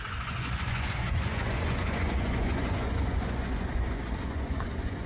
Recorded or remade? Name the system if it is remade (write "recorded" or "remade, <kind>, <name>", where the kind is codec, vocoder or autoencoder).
remade, vocoder, Vocos